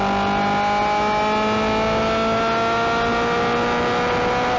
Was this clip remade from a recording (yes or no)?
no